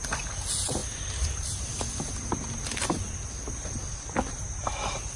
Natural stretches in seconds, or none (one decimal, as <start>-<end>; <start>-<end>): 0.0-5.2